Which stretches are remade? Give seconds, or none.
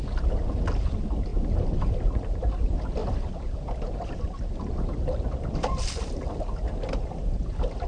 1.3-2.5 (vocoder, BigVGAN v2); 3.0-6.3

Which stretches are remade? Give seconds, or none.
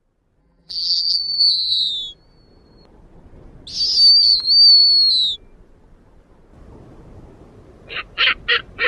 0.4-1.9 (vocoder, BigVGAN v2)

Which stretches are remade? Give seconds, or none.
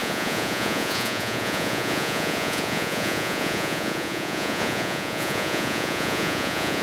0.0-6.8 (vocoder, Vocos)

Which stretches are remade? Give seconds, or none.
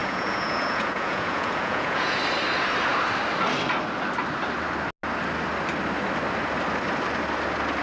0.0-2.2 (vocoder, Vocos)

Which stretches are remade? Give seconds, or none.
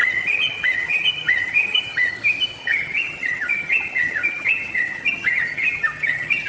0.0-2.1 (vocoder, HiFi-GAN); 2.6-6.5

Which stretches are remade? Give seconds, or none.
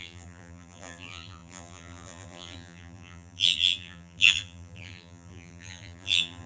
0.0-6.5 (vocoder, BigVGAN v2)